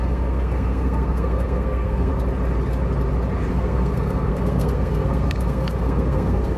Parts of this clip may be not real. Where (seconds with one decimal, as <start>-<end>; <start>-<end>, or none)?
0.0-2.1; 3.5-6.6